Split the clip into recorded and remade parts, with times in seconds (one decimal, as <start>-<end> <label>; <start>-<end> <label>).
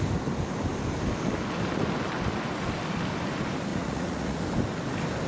0.0-3.7 recorded; 3.7-4.4 remade; 4.4-5.3 recorded